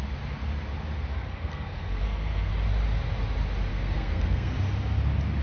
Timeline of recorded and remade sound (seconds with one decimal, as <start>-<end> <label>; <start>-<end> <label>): 0.0-1.1 recorded; 1.1-2.5 remade; 2.5-3.7 recorded; 3.7-4.6 remade; 4.6-5.4 recorded

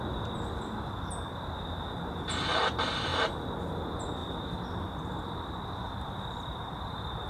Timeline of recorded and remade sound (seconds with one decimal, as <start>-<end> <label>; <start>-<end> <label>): 0.0-4.2 recorded; 4.2-7.3 remade